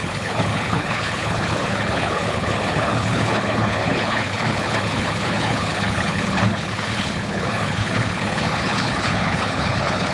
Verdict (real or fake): fake